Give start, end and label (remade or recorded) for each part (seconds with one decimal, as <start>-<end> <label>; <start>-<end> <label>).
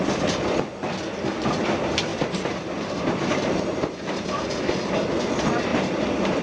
0.0-2.1 recorded; 2.1-4.5 remade; 4.5-5.7 recorded; 5.7-6.4 remade